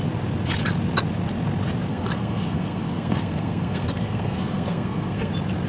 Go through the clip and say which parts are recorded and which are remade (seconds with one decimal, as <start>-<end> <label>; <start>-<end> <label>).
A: 0.0-1.9 recorded; 1.9-5.3 remade; 5.3-5.7 recorded